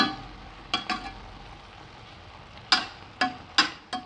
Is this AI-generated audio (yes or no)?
no